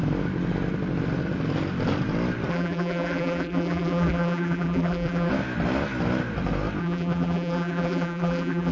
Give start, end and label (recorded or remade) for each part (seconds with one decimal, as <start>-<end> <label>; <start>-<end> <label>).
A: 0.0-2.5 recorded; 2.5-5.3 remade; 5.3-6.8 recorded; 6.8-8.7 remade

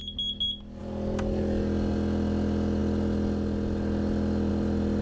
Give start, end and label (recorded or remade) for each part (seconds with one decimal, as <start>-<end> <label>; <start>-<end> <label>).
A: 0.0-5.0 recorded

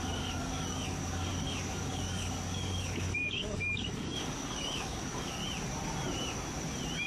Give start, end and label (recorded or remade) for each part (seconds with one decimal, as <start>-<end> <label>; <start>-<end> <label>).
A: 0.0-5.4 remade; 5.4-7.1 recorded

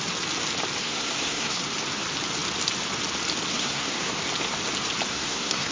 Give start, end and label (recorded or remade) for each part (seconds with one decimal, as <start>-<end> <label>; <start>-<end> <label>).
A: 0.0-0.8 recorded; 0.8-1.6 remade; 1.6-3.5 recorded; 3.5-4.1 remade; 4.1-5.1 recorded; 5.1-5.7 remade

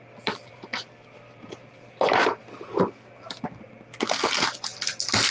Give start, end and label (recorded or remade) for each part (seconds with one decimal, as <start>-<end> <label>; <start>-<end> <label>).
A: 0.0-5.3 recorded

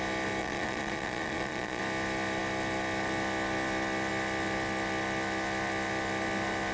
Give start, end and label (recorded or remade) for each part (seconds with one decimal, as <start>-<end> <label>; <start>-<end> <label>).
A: 0.0-0.4 recorded; 0.4-1.8 remade; 1.8-6.7 recorded